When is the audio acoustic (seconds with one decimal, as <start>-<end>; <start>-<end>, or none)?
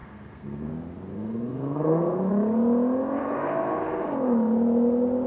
0.7-1.1; 2.3-3.2; 4.1-5.3